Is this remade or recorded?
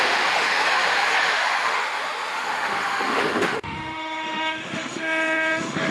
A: remade